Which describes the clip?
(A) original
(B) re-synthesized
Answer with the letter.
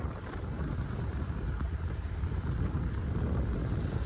A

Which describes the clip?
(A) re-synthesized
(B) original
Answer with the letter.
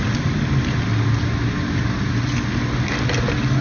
B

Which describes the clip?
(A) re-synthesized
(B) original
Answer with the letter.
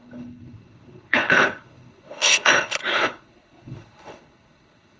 A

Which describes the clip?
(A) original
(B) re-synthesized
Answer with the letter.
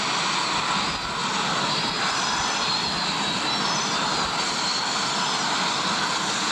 A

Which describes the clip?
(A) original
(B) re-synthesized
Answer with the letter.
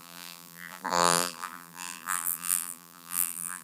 B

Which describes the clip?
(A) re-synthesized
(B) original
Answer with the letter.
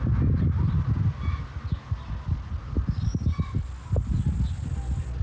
B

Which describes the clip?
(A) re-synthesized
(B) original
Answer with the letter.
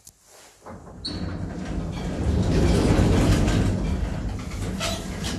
B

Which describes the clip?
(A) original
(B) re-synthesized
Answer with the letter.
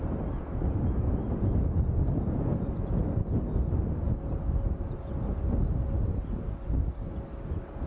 A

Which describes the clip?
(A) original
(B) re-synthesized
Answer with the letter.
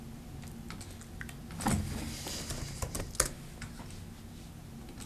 A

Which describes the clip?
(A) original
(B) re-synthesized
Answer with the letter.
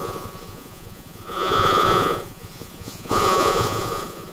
B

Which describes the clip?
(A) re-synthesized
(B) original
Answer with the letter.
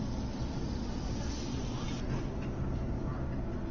B